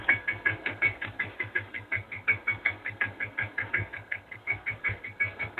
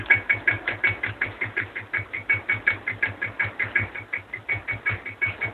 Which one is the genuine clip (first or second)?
second